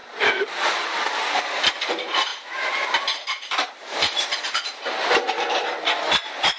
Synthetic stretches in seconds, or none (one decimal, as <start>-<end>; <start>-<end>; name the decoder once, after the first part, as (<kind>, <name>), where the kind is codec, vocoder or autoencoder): 1.9-6.6 (vocoder, BigVGAN v2)